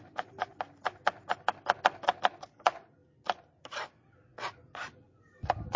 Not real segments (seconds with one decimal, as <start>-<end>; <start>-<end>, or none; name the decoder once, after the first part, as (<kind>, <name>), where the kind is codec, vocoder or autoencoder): 4.3-4.9 (vocoder, Vocos)